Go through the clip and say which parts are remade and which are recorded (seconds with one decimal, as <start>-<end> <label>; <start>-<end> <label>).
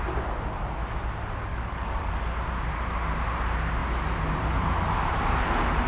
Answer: 0.0-1.5 recorded; 1.5-2.1 remade; 2.1-5.9 recorded